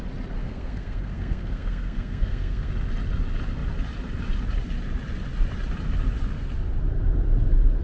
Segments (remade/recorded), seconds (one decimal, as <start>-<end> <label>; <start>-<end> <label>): 0.0-0.4 recorded; 0.4-2.7 remade; 2.7-7.8 recorded